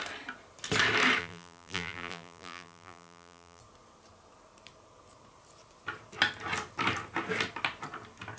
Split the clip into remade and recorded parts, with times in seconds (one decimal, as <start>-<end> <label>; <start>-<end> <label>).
0.0-1.2 recorded; 1.2-3.6 remade; 3.6-8.4 recorded